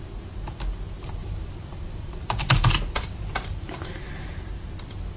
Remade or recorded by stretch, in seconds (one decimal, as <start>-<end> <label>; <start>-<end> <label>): 0.0-1.2 recorded; 1.2-4.3 remade; 4.3-5.2 recorded